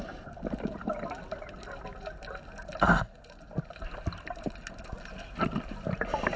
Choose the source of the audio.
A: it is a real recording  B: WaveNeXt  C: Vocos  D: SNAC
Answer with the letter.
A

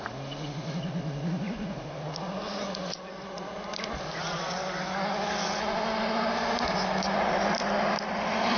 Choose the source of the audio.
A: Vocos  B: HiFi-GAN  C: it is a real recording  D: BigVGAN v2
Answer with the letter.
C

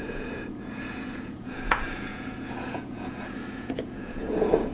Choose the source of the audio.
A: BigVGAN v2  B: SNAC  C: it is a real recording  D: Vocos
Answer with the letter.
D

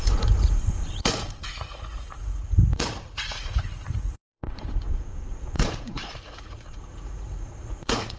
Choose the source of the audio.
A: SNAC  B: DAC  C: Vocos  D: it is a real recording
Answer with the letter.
C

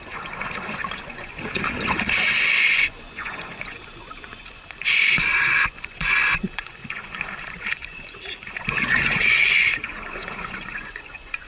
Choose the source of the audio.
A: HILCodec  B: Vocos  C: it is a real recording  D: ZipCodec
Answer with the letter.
B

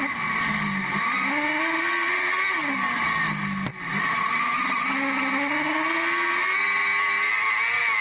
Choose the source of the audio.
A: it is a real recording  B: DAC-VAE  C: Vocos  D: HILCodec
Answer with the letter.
A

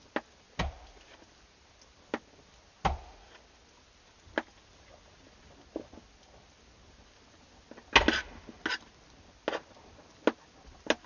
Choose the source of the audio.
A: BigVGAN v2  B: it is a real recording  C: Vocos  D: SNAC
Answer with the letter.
B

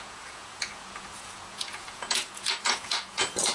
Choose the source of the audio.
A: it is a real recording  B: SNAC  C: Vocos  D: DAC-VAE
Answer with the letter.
C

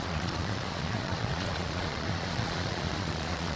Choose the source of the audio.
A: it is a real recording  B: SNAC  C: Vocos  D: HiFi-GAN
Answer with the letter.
C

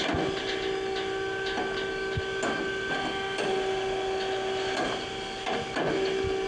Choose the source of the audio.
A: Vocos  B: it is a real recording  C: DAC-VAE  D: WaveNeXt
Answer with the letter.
B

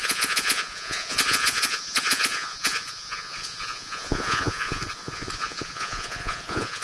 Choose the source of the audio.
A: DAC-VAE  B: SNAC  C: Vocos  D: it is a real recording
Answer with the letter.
C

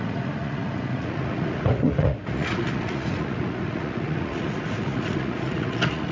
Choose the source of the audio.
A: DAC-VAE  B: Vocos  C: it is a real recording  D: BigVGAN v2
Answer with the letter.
B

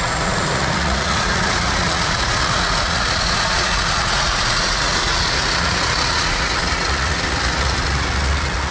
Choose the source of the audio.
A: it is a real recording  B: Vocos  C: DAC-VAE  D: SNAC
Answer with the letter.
B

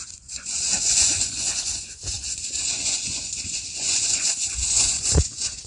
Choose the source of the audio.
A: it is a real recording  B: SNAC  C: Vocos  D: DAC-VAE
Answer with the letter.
C